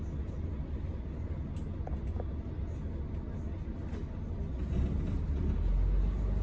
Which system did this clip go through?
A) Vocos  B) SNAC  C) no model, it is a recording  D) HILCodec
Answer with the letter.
C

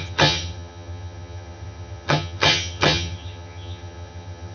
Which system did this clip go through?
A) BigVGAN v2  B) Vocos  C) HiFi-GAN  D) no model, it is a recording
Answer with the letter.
C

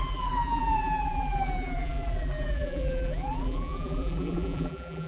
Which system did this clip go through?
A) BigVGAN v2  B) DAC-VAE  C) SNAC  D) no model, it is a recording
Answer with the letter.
A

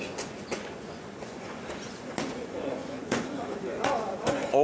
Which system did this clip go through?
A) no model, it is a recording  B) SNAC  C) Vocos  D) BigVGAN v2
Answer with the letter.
C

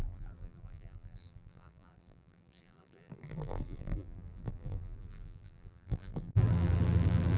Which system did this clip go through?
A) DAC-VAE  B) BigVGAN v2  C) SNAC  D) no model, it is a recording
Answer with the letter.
B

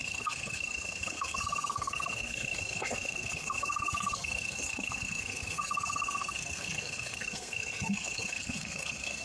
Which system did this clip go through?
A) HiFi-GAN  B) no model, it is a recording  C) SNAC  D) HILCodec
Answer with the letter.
C